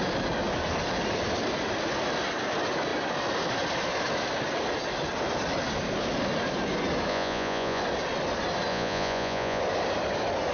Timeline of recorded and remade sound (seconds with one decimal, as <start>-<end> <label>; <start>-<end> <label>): 0.0-7.1 recorded; 7.1-7.8 remade; 7.8-8.7 recorded; 8.7-9.6 remade; 9.6-10.5 recorded